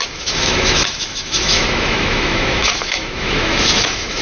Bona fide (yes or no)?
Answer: no